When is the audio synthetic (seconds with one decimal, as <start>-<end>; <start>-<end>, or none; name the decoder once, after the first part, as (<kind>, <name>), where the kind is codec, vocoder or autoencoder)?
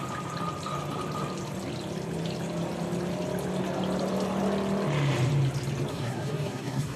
5.9-7.0 (codec, SNAC)